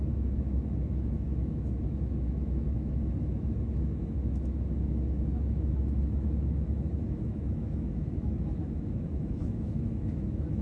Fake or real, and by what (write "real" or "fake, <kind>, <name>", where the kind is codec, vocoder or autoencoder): fake, autoencoder, DAC-VAE